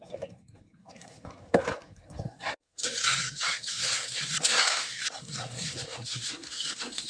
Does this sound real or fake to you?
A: fake